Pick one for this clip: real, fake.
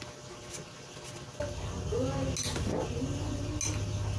real